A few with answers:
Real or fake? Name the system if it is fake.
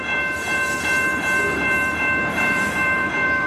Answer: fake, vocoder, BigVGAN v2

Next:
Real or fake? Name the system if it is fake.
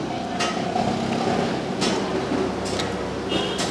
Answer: real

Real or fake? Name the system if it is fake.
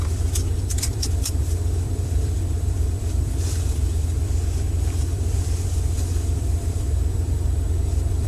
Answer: fake, vocoder, BigVGAN v2